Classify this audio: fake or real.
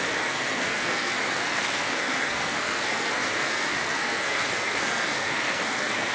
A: fake